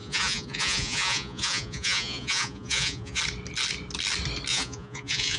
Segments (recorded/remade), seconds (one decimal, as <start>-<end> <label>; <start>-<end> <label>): 0.0-3.2 remade; 3.2-4.5 recorded; 4.5-5.4 remade